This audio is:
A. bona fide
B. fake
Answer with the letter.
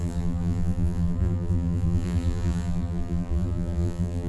B